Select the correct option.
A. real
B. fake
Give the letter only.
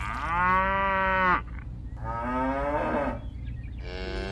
A